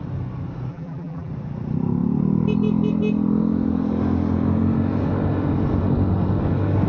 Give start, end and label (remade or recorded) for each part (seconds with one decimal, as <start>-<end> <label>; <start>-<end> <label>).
0.0-0.7 recorded; 0.7-1.3 remade; 1.3-6.9 recorded